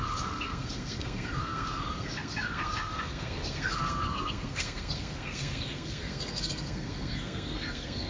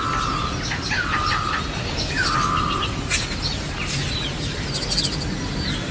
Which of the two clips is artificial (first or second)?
first